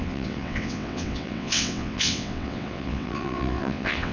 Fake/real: fake